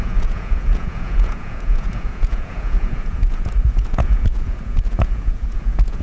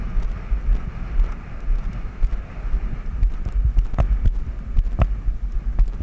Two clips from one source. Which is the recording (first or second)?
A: second